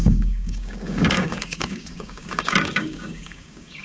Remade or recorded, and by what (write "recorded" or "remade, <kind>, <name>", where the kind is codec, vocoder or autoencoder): remade, codec, DAC